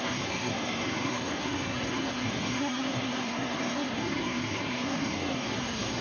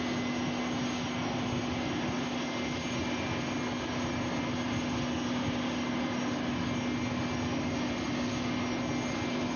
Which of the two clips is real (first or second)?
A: second